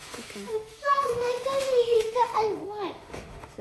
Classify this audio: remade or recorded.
remade